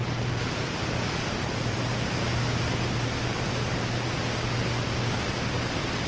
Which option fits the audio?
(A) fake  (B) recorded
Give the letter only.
B